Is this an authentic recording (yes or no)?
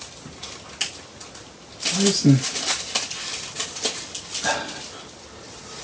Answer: yes